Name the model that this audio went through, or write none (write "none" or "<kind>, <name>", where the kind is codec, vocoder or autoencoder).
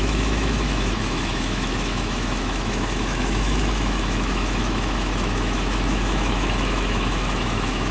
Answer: autoencoder, DAC-VAE